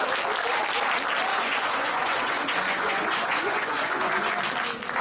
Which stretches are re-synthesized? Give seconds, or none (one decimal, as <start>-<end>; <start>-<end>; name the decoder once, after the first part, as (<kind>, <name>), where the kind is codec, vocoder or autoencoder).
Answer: 1.3-4.3 (vocoder, Vocos)